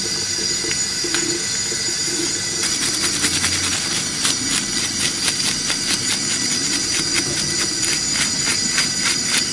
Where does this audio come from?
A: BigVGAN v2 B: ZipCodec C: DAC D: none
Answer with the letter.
D